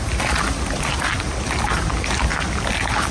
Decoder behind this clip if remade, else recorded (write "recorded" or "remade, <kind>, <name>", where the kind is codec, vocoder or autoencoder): recorded